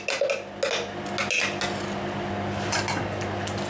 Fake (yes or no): no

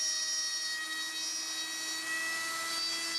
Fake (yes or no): no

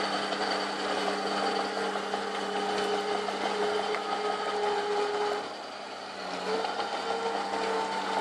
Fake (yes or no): no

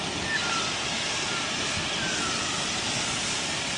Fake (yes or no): no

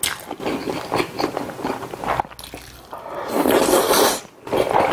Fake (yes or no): no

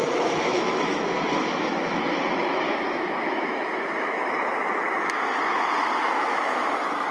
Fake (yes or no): yes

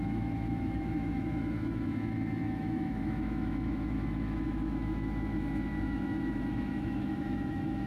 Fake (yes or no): yes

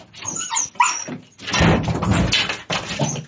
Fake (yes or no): no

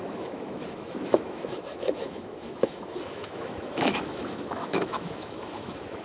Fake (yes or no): yes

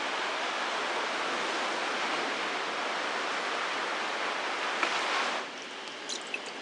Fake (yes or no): no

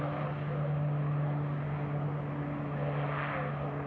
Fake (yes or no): no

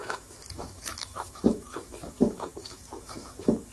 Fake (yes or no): yes